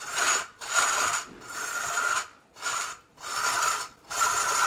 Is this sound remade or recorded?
recorded